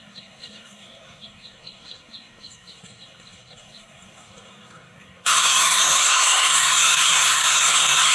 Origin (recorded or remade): remade